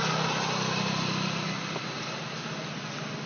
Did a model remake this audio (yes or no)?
no